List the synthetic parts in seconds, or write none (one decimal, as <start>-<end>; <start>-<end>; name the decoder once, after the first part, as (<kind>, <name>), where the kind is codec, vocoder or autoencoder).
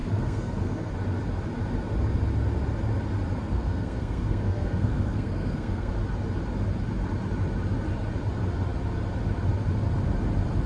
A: 0.0-0.9 (codec, SNAC); 3.4-5.9